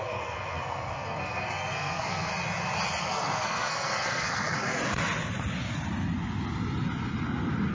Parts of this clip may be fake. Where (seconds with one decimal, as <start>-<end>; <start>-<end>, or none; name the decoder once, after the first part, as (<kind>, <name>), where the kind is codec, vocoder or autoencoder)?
0.0-2.3 (codec, SNAC); 3.0-4.8